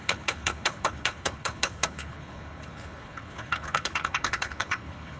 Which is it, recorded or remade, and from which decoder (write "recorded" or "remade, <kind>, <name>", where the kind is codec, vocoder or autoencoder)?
remade, codec, HILCodec